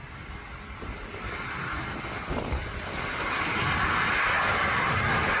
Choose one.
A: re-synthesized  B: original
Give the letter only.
B